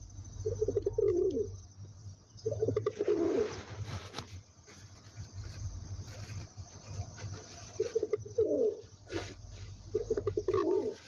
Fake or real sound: real